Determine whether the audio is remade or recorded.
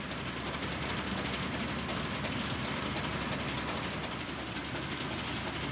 recorded